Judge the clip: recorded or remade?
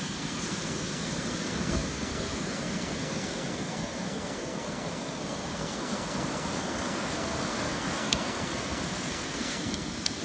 remade